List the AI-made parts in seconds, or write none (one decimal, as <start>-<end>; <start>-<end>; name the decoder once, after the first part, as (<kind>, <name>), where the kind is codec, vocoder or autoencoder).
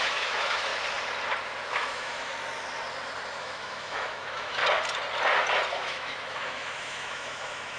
0.0-0.7 (autoencoder, DAC-VAE); 1.7-2.3; 3.4-4.6; 5.7-7.8